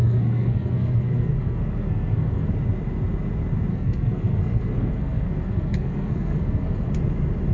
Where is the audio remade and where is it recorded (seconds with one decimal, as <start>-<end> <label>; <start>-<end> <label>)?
0.0-2.5 remade; 2.5-3.7 recorded; 3.7-6.9 remade; 6.9-7.5 recorded